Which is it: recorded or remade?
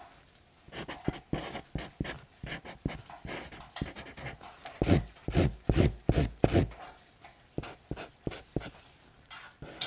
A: recorded